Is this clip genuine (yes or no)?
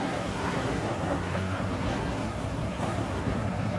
no